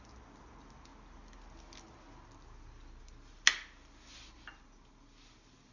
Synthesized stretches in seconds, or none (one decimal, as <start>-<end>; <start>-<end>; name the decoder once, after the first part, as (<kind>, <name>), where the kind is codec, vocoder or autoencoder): none